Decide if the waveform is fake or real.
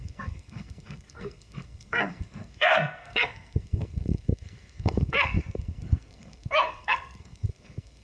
fake